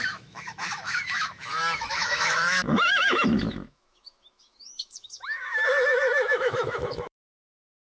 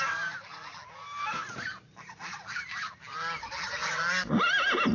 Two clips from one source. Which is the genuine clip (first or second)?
second